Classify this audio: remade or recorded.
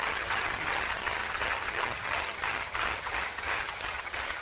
remade